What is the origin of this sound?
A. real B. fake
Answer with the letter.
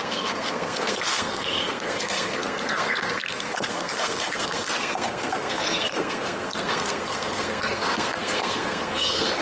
B